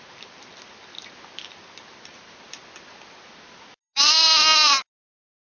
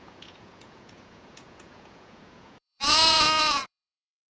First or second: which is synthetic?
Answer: second